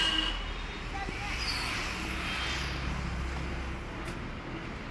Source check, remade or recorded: recorded